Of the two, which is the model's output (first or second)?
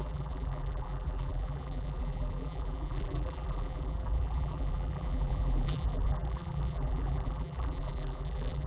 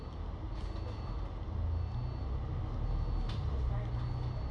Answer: first